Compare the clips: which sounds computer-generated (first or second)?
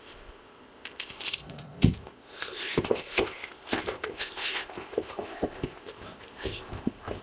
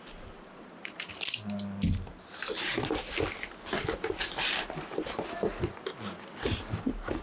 first